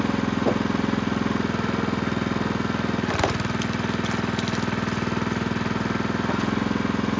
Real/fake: real